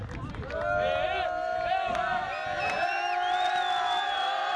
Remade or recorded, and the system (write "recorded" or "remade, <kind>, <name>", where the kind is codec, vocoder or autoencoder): recorded